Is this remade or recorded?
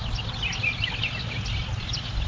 recorded